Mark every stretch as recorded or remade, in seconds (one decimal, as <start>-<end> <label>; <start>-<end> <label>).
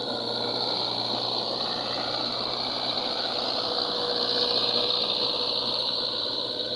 0.0-6.8 recorded